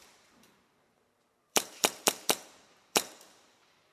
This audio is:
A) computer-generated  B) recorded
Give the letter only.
A